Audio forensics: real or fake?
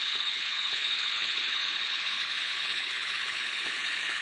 fake